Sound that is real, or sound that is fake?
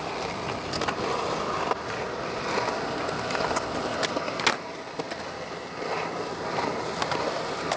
real